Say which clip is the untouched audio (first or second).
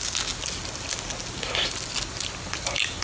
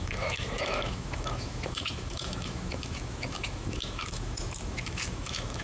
first